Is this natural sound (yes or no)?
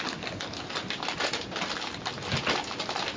yes